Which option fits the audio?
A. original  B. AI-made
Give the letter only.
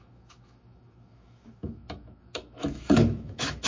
B